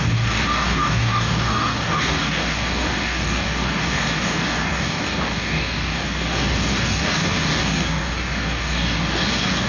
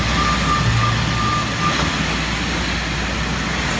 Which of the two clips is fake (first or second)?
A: first